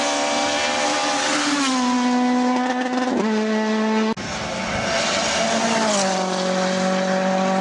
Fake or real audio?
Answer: real